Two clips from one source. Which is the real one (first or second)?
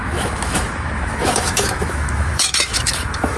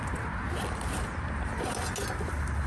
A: second